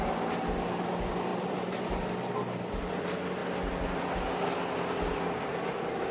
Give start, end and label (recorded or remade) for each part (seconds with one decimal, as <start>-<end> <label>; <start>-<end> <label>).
0.0-1.3 recorded; 1.3-2.1 remade; 2.1-6.1 recorded